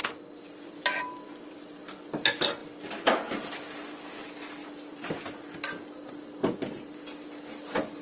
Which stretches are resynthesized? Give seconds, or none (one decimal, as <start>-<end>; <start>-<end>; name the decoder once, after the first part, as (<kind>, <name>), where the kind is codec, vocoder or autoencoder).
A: 4.6-5.2 (vocoder, BigVGAN v2); 6.4-7.0